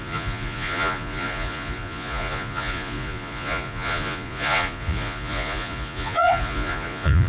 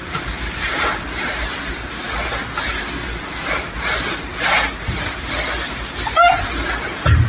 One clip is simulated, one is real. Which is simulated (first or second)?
first